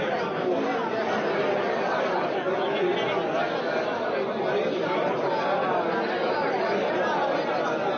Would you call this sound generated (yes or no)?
no